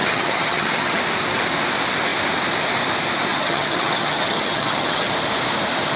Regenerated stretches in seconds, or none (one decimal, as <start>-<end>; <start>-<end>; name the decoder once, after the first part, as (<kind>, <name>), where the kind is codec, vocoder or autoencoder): 0.0-1.0 (vocoder, HiFi-GAN); 3.3-5.1